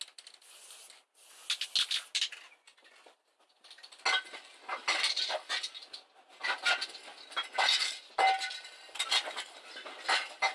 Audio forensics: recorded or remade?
recorded